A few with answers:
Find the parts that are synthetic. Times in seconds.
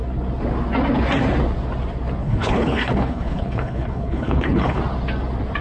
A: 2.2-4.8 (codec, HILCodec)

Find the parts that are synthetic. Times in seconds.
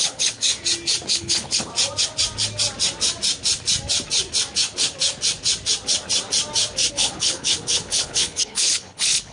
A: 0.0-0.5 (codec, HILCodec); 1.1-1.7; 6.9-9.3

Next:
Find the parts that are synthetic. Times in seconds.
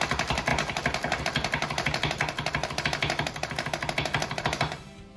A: none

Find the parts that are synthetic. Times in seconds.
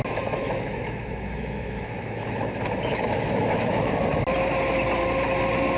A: 0.4-3.9 (autoencoder, DAC-VAE)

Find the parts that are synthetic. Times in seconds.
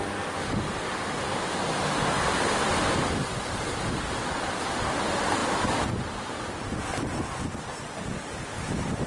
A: none